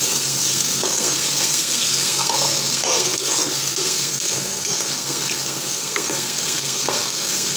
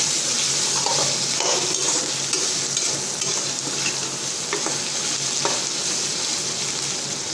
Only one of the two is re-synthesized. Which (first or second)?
first